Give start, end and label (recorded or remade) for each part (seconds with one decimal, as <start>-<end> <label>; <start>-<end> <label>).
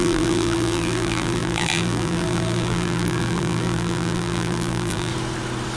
0.0-5.1 remade; 5.1-5.8 recorded